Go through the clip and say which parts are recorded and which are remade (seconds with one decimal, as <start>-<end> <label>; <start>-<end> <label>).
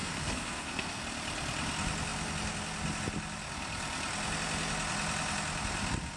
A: 0.0-1.0 remade; 1.0-6.2 recorded